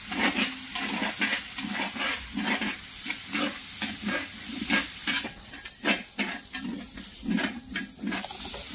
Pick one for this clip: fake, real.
real